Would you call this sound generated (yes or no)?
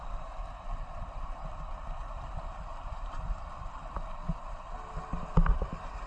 no